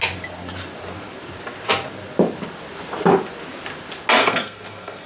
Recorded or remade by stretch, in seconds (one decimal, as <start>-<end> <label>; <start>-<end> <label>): 0.0-4.2 recorded; 4.2-5.1 remade